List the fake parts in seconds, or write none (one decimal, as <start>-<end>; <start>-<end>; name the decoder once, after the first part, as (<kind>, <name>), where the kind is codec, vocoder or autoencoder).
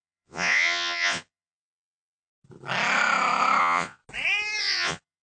0.0-2.3 (vocoder, Vocos); 3.6-4.0; 4.6-5.2